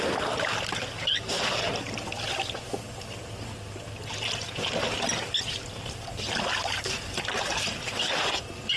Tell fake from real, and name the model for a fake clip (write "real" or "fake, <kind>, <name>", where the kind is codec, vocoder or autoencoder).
real